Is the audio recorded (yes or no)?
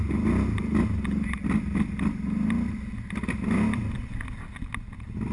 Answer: yes